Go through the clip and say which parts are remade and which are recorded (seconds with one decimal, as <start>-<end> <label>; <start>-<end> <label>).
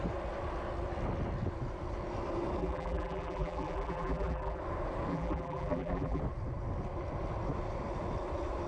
0.0-2.6 recorded; 2.6-4.6 remade; 4.6-5.1 recorded; 5.1-6.2 remade; 6.2-8.7 recorded